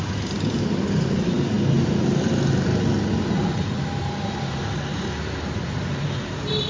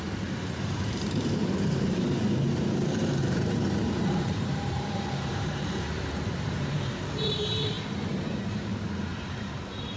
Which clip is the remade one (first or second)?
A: second